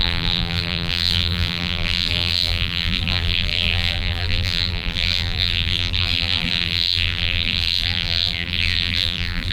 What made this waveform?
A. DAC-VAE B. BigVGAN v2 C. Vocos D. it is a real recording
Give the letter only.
B